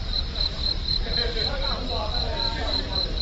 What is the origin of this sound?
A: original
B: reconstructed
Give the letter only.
B